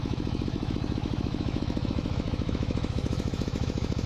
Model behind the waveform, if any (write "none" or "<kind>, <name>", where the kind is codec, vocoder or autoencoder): autoencoder, DAC-VAE